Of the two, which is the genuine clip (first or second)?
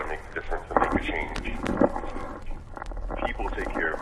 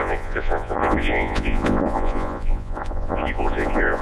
first